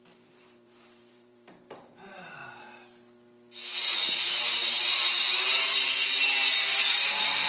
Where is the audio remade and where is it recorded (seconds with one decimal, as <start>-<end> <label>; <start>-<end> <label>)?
0.0-2.4 remade; 2.4-3.8 recorded; 3.8-7.5 remade